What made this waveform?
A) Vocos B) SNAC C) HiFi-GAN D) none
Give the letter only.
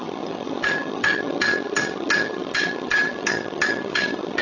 C